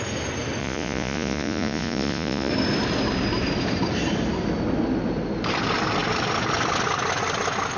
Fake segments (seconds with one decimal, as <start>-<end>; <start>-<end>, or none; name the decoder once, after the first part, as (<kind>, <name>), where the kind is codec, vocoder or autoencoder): 0.6-2.5 (vocoder, Vocos)